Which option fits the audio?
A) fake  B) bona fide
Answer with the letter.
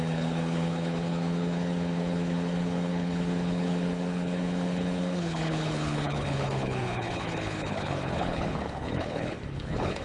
A